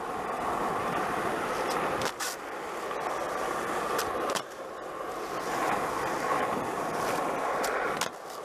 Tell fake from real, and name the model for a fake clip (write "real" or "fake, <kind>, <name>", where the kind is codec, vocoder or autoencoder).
real